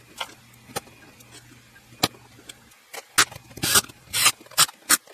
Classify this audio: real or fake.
real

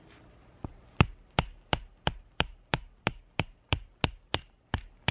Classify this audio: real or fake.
real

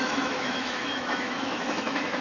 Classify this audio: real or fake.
fake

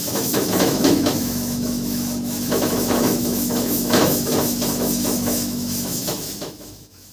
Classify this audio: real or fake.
fake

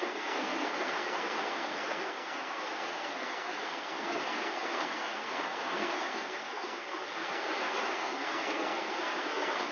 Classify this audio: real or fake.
fake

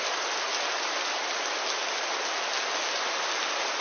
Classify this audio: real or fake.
real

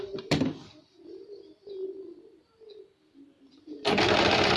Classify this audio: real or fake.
real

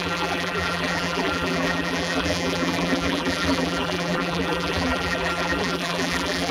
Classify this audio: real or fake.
fake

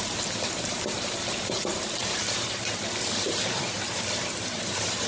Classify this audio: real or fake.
fake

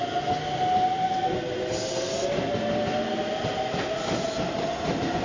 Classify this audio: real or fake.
real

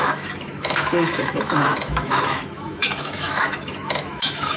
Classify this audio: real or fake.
fake